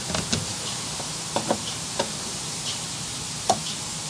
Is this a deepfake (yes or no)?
yes